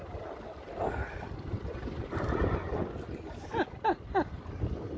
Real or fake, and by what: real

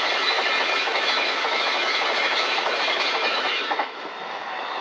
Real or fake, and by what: fake, autoencoder, DAC-VAE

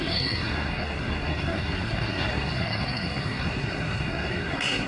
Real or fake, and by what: fake, codec, SNAC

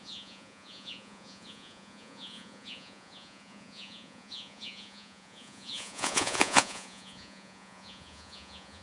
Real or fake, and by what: fake, vocoder, Vocos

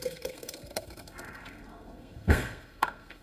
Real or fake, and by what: fake, codec, SNAC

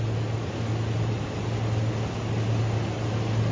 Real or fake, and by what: real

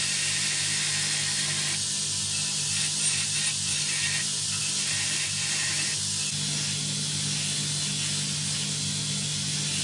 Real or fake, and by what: real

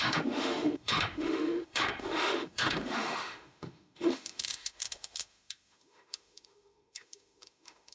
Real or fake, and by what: fake, autoencoder, DAC-VAE